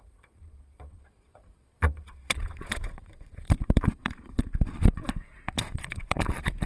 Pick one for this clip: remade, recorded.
remade